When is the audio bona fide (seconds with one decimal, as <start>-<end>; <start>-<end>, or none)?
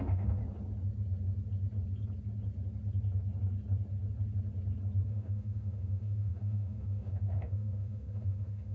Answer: 0.4-5.1